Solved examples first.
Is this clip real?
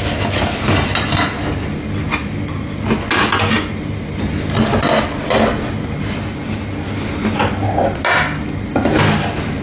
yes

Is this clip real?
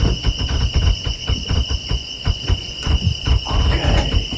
no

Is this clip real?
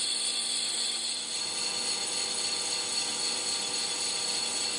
yes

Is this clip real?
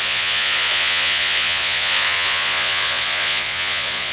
no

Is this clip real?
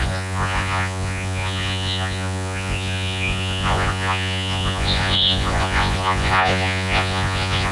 no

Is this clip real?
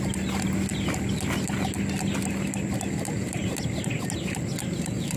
yes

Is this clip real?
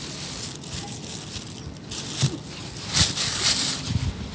yes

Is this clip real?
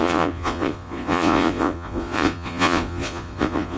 no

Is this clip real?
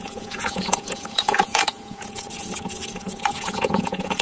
no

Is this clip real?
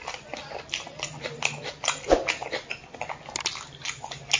yes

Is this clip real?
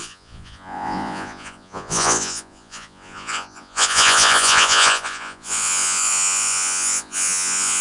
no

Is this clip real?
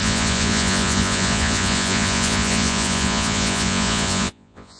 no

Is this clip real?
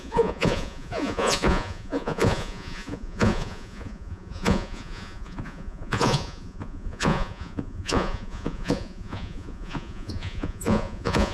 no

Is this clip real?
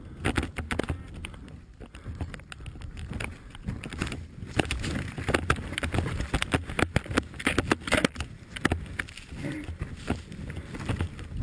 yes